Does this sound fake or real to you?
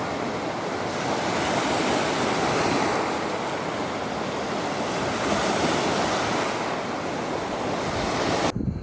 real